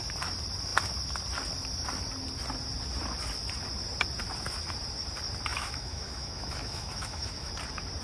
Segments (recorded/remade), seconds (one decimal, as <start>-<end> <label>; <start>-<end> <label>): 0.0-5.5 recorded; 5.5-7.5 remade; 7.5-8.0 recorded